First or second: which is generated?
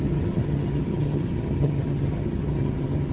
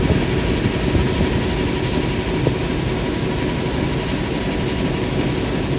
first